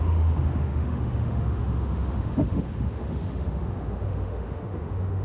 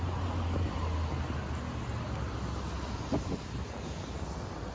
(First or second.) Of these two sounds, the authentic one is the second